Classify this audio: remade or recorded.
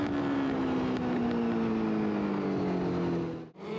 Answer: recorded